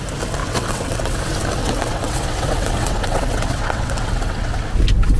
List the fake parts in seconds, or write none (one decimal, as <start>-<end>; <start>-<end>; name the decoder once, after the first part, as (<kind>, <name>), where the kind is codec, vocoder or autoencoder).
0.4-1.2 (vocoder, WaveNeXt); 1.6-4.7